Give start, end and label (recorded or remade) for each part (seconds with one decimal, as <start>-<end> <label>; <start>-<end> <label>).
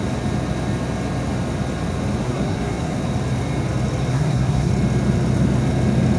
0.0-2.2 recorded; 2.2-3.0 remade; 3.0-4.1 recorded; 4.1-4.7 remade; 4.7-6.2 recorded